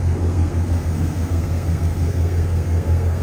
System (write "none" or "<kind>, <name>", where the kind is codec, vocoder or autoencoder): codec, SNAC